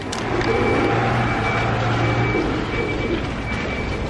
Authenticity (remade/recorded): recorded